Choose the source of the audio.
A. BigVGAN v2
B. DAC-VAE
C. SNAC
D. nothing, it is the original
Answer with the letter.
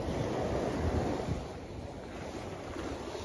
D